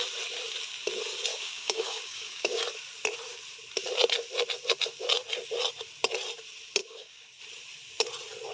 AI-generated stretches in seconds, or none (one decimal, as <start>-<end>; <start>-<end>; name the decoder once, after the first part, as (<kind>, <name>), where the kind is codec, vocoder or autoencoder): 1.3-2.6 (codec, DAC); 6.8-7.4